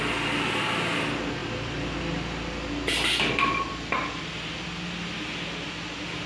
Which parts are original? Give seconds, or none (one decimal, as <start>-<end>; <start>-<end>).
0.0-6.3